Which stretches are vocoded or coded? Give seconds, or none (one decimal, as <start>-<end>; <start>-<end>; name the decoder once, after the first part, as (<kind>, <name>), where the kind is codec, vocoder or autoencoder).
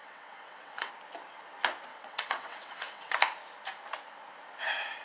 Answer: 0.0-0.9 (vocoder, WaveNeXt); 1.9-3.1